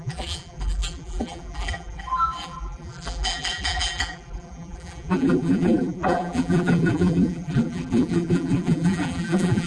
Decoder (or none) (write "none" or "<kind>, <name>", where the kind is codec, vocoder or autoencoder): vocoder, BigVGAN v2